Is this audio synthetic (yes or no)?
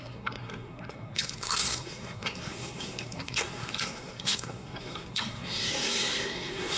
yes